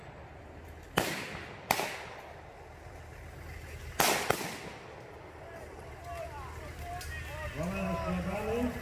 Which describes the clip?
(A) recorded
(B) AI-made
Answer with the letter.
A